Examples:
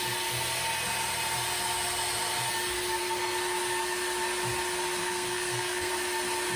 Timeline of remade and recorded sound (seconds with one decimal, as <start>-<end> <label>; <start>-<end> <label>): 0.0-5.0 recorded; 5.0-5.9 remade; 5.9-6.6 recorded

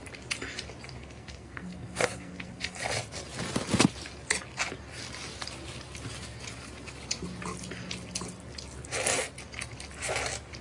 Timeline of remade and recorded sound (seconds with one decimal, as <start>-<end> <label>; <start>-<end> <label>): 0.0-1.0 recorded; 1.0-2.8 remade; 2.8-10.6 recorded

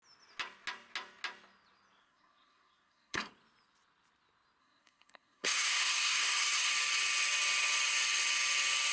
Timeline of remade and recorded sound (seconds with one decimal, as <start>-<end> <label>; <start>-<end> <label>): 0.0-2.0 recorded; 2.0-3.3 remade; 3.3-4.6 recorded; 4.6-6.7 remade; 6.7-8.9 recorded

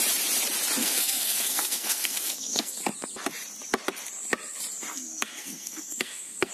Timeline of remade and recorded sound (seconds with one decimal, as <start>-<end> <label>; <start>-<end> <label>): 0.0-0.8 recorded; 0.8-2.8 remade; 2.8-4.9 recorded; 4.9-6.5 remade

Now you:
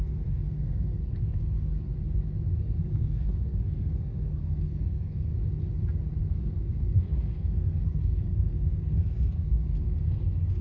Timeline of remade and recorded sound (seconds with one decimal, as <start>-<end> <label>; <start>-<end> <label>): 0.0-1.7 remade; 1.7-2.6 recorded; 2.6-5.3 remade; 5.3-6.2 recorded; 6.2-10.6 remade